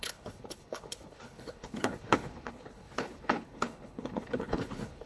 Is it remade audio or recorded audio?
remade